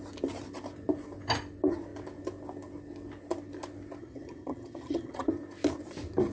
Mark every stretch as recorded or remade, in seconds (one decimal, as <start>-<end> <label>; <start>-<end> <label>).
0.0-4.0 recorded; 4.0-5.3 remade; 5.3-6.3 recorded